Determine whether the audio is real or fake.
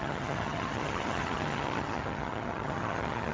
fake